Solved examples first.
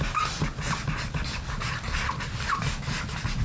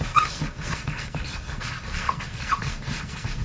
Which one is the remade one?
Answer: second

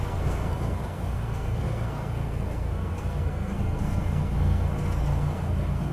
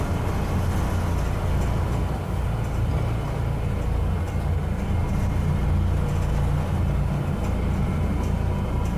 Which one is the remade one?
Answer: first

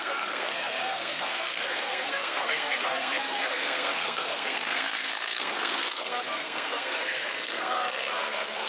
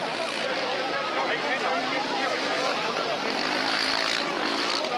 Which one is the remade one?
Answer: first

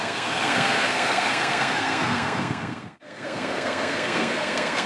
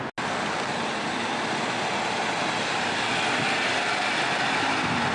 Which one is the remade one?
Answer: first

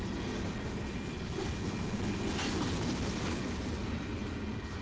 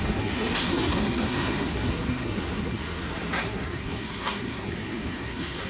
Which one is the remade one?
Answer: second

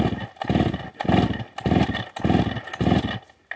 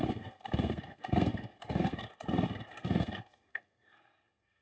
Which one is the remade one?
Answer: second